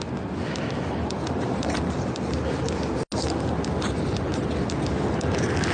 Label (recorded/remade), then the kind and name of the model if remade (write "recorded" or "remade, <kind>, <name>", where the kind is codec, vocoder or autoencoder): recorded